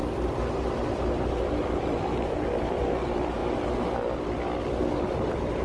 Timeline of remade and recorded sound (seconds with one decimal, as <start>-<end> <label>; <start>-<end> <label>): 0.0-3.4 remade; 3.4-5.0 recorded; 5.0-5.6 remade